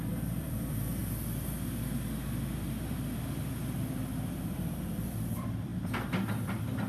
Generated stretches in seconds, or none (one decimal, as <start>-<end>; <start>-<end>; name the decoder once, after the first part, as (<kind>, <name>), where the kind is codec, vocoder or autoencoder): 0.0-1.0 (vocoder, BigVGAN v2); 4.9-6.9